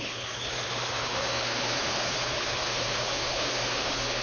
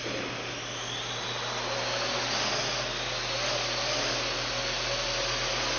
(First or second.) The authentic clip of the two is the second